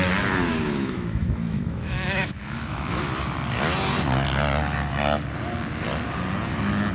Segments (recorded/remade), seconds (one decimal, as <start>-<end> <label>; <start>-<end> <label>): 0.0-0.5 recorded; 0.5-3.0 remade; 3.0-6.9 recorded